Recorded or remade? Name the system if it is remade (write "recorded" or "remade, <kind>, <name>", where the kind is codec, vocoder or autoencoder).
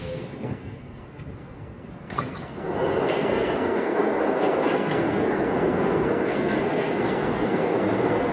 remade, codec, SNAC